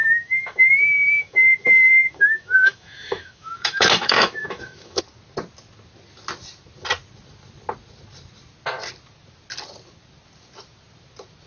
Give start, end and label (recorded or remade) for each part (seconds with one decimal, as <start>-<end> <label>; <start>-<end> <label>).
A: 0.0-5.0 remade; 5.0-11.5 recorded